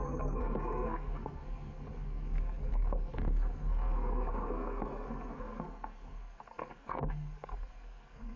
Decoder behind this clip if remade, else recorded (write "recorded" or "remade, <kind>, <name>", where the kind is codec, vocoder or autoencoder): remade, codec, SNAC